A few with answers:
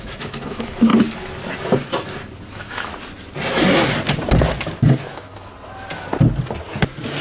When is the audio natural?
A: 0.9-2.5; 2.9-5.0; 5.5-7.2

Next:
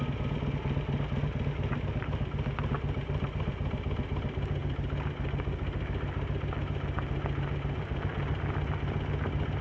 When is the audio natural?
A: 0.0-9.6

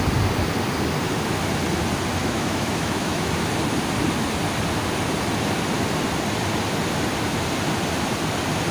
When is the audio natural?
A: 0.0-2.2; 3.3-8.7

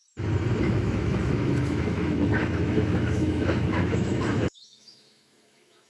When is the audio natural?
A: 0.0-0.6

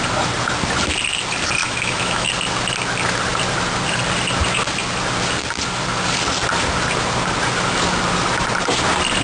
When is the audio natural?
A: 0.0-1.6; 2.3-9.2

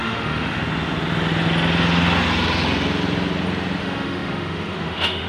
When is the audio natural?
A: 0.6-3.8

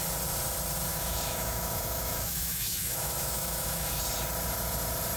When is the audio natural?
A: 0.0-0.9; 4.0-5.2

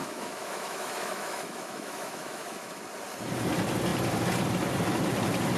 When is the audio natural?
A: 2.8-5.6